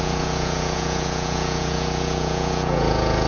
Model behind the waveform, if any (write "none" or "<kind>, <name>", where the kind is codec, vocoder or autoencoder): vocoder, Vocos